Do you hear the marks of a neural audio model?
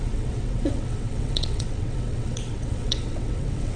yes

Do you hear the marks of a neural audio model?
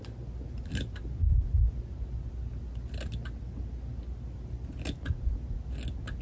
no